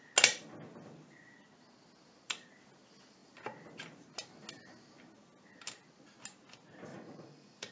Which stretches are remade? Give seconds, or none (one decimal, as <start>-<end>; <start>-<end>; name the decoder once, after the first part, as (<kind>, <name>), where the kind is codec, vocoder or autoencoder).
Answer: 6.9-7.7 (vocoder, Vocos)